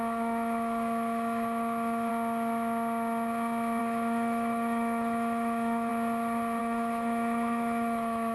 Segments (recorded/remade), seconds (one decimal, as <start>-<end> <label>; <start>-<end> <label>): 0.0-2.1 remade; 2.1-3.8 recorded; 3.8-5.9 remade; 5.9-6.6 recorded; 6.6-8.3 remade

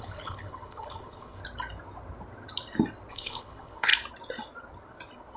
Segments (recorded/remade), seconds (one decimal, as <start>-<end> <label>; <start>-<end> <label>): 0.0-1.4 remade; 1.4-3.1 recorded; 3.1-3.9 remade; 3.9-5.4 recorded

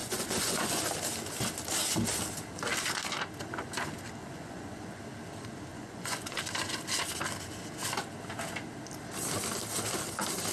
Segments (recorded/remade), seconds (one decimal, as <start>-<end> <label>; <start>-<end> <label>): 0.0-0.8 remade; 0.8-4.2 recorded; 4.2-5.0 remade; 5.0-5.7 recorded; 5.7-6.4 remade; 6.4-10.5 recorded

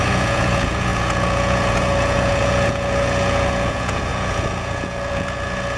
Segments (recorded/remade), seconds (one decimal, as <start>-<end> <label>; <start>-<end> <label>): 0.0-5.8 remade

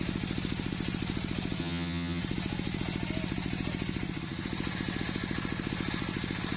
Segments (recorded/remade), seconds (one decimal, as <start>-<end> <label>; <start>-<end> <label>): 0.0-1.6 recorded; 1.6-2.2 remade; 2.2-6.6 recorded

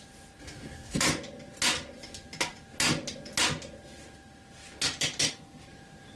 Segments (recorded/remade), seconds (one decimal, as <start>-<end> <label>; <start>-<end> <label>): 0.0-0.4 recorded; 0.4-1.0 remade; 1.0-6.2 recorded